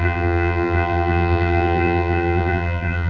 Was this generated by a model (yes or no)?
yes